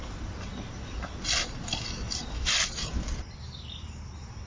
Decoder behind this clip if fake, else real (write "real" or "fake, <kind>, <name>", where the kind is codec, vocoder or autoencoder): real